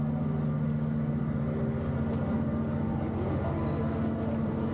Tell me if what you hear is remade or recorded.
recorded